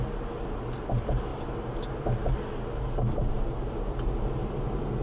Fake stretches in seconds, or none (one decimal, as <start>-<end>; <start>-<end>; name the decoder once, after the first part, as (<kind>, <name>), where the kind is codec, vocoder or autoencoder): none